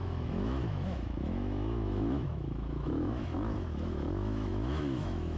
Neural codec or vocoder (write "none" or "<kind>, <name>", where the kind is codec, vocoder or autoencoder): autoencoder, DAC-VAE